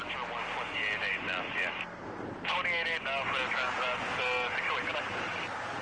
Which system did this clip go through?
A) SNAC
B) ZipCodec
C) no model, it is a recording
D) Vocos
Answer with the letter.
C